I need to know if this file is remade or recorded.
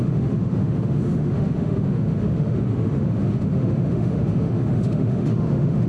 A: remade